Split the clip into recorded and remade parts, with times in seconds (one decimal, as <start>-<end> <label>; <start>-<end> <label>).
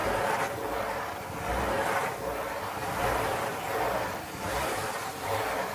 0.0-0.6 remade; 0.6-2.0 recorded; 2.0-5.7 remade